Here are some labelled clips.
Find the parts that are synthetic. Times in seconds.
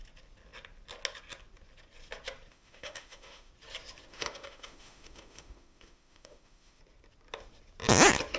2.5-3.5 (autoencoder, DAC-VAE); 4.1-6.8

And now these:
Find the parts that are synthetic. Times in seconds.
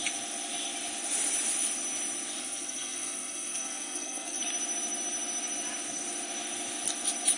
2.4-4.4 (codec, SNAC)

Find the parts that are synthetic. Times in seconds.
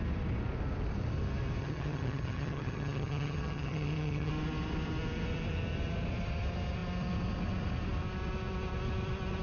1.6-4.3 (vocoder, HiFi-GAN)